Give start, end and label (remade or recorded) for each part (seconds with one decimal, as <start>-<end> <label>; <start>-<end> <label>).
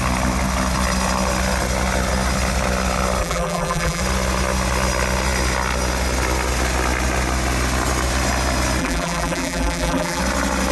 0.0-3.2 recorded; 3.2-4.0 remade; 4.0-8.8 recorded; 8.8-10.2 remade; 10.2-10.7 recorded